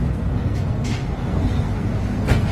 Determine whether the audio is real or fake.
fake